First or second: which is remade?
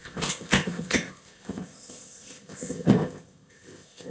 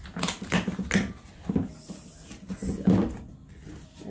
first